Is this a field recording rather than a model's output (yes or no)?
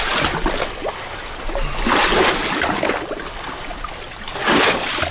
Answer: yes